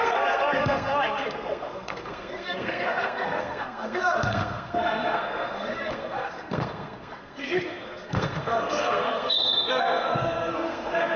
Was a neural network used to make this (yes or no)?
yes